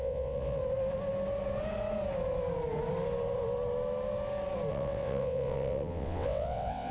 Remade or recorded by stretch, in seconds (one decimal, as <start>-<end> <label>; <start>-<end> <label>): 0.0-0.6 remade; 0.6-4.7 recorded; 4.7-6.9 remade